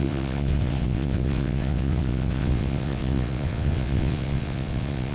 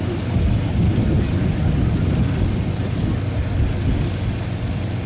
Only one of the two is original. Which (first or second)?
second